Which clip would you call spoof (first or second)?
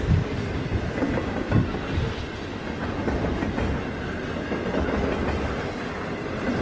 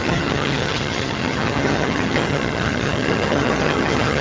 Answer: second